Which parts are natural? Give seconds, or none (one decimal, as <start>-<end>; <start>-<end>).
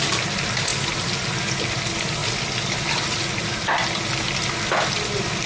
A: 0.0-5.5